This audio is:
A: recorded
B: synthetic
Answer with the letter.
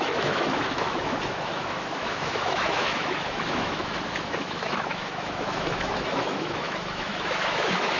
B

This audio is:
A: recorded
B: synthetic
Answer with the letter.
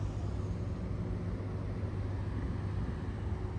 A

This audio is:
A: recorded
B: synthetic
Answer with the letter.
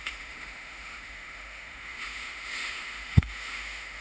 B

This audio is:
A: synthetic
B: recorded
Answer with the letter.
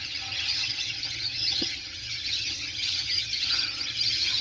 A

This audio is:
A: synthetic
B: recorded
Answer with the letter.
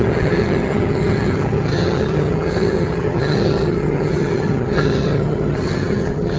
A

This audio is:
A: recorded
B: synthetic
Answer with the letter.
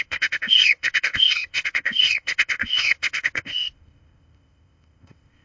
B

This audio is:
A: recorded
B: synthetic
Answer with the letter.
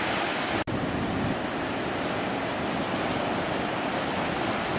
A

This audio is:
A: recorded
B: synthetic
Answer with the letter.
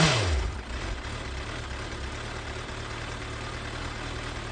A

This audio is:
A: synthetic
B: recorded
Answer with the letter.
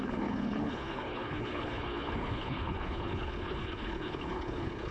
A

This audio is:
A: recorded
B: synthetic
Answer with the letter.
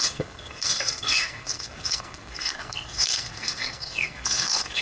B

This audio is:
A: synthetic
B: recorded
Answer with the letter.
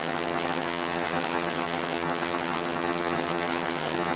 A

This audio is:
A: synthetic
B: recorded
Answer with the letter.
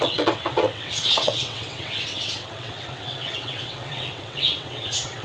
A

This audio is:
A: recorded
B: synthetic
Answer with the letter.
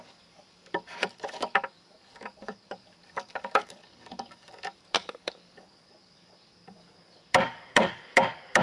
B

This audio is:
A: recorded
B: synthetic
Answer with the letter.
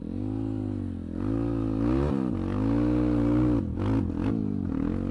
A